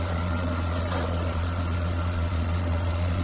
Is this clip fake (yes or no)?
yes